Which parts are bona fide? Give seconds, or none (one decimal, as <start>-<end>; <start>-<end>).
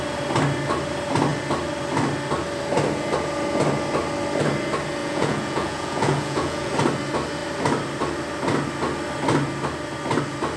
0.0-5.0; 6.7-10.6